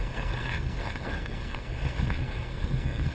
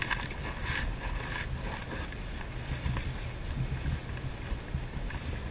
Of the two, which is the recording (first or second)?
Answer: second